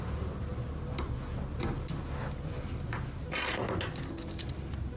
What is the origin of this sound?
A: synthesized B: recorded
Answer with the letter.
B